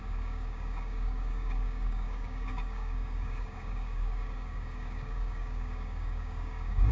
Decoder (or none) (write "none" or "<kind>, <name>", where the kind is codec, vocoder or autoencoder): codec, DAC